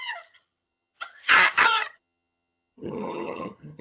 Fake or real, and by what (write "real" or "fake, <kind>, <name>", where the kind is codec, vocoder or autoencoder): fake, vocoder, HiFi-GAN